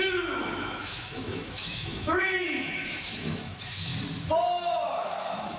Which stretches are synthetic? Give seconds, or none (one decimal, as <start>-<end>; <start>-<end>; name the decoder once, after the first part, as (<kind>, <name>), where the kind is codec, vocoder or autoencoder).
0.0-3.9 (autoencoder, DAC-VAE); 5.0-5.6

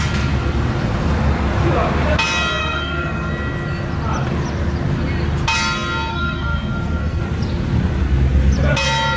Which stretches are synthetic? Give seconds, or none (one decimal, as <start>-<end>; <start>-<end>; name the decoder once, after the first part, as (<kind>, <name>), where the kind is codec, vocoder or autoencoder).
2.6-3.3 (codec, SNAC); 6.1-7.2